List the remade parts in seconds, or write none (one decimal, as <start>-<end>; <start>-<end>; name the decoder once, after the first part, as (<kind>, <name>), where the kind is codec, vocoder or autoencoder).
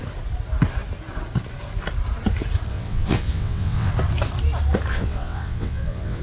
2.7-3.9 (vocoder, WaveNeXt); 4.9-6.2